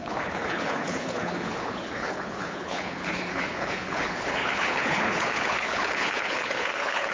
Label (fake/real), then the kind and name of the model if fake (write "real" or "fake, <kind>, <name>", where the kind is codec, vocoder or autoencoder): fake, codec, HILCodec